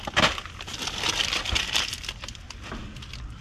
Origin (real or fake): real